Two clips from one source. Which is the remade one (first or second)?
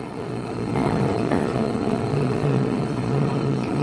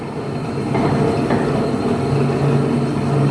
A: first